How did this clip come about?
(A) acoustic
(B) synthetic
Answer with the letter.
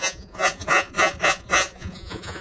B